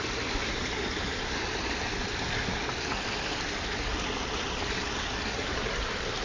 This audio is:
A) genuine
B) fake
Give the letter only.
A